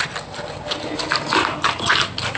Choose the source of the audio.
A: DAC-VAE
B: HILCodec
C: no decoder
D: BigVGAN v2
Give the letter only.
C